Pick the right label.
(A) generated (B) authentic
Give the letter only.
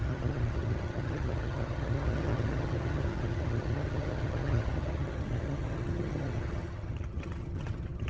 A